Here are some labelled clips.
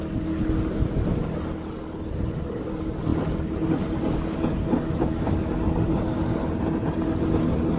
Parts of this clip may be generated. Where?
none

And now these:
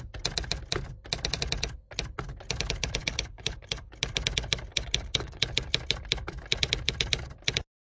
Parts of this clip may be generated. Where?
3.0-3.9 (codec, HILCodec); 4.7-5.4

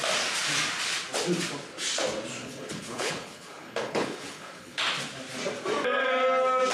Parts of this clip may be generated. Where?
2.4-4.8 (codec, HILCodec)

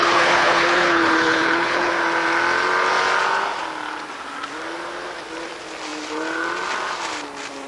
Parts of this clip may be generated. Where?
0.0-1.9 (codec, HILCodec)

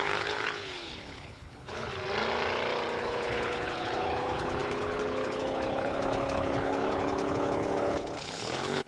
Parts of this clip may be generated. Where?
0.0-1.9 (codec, HILCodec); 3.0-8.9

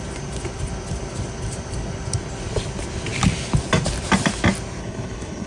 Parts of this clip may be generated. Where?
4.8-5.5 (codec, HILCodec)

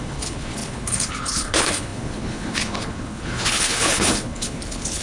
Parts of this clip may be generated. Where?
0.0-5.0 (codec, HILCodec)

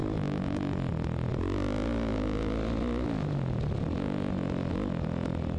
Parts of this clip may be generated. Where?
none